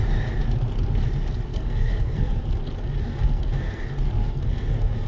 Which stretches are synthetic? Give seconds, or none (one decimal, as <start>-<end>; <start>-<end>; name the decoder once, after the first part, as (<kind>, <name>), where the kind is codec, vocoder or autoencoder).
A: 1.5-2.4 (codec, SNAC); 3.1-3.8; 4.2-5.1